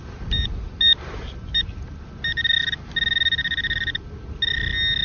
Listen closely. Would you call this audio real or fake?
real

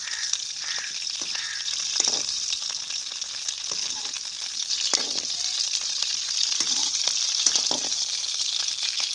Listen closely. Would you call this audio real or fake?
real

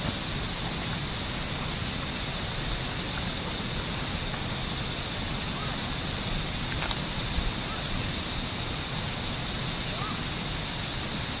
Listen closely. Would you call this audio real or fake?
real